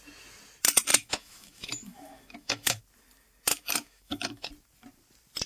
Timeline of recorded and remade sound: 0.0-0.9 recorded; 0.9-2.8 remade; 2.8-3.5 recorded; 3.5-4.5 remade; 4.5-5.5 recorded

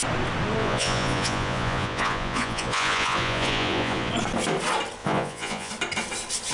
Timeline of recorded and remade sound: 0.0-0.6 recorded; 0.6-4.1 remade; 4.1-5.0 recorded; 5.0-5.7 remade; 5.7-6.5 recorded